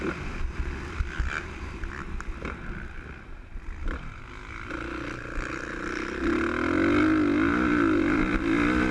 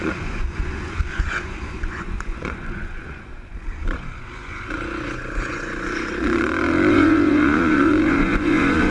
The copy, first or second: second